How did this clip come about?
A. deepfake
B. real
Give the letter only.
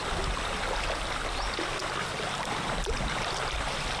B